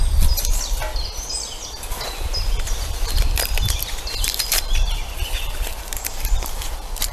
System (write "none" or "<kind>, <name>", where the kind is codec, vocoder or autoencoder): vocoder, BigVGAN v2